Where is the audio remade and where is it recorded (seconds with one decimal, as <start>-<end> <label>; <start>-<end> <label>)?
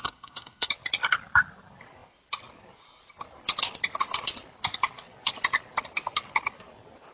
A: 0.0-0.7 remade; 0.7-7.1 recorded